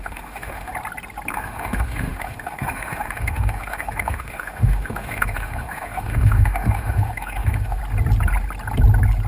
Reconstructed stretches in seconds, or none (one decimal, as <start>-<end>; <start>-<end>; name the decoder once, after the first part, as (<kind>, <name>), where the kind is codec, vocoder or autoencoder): 0.0-0.7 (autoencoder, DAC-VAE); 1.3-7.8